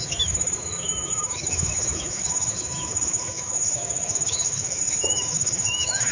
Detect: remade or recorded remade